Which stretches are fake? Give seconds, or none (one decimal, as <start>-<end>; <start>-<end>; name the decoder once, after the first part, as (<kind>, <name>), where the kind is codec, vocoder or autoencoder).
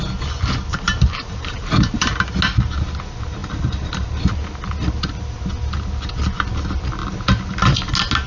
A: 0.7-2.2 (vocoder, BigVGAN v2); 3.4-4.3